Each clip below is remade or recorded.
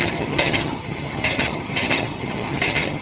remade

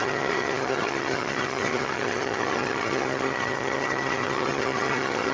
remade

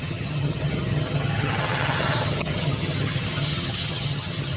remade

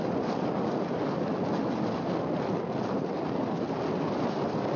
recorded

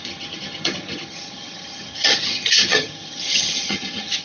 remade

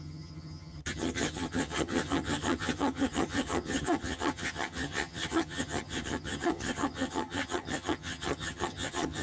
remade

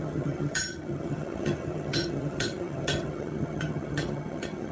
remade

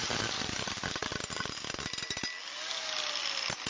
recorded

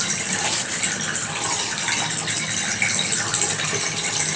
recorded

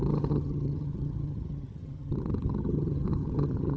remade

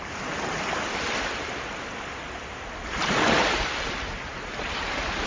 recorded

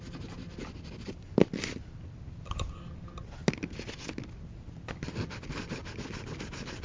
recorded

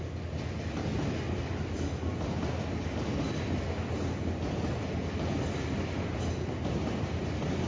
recorded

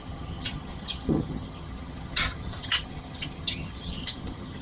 remade